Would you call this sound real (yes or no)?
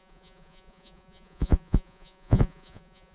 no